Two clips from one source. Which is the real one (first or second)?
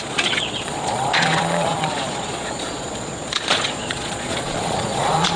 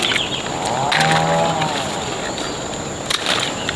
second